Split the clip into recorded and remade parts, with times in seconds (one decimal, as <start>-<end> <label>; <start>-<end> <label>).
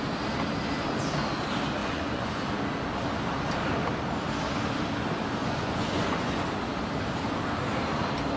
0.0-1.8 recorded; 1.8-2.4 remade; 2.4-5.4 recorded; 5.4-6.3 remade; 6.3-8.4 recorded